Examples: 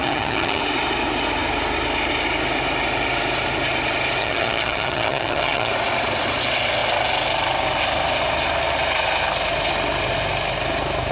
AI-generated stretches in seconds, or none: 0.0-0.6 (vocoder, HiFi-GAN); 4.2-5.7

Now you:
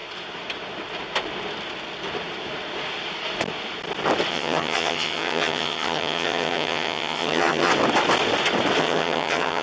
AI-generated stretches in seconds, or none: 4.3-7.7 (vocoder, HiFi-GAN); 8.8-9.6